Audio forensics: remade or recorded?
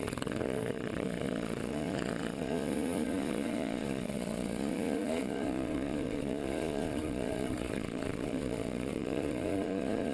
remade